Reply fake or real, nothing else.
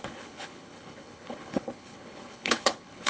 fake